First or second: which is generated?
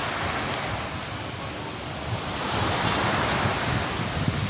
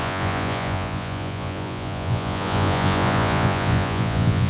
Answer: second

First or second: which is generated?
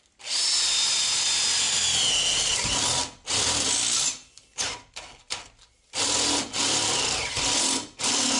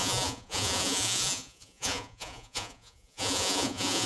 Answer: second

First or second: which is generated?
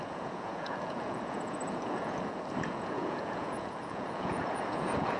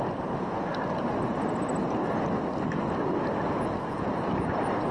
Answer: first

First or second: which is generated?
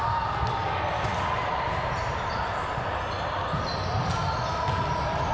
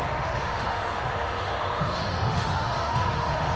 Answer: second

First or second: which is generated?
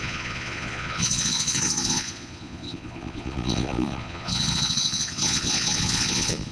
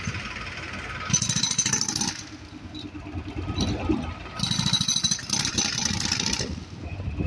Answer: first